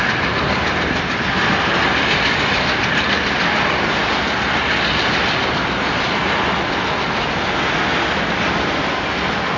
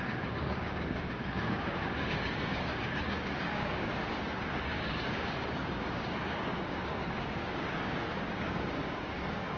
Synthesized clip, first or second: second